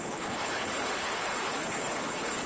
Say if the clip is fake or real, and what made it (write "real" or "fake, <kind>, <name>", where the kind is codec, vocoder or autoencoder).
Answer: fake, codec, HILCodec